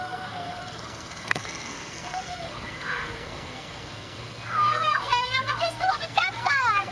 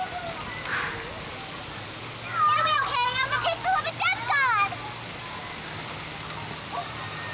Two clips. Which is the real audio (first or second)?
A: second